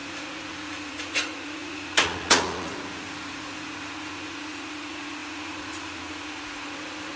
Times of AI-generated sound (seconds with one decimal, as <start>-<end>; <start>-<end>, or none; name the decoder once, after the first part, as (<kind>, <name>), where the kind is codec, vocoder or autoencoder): 0.0-7.2 (vocoder, Vocos)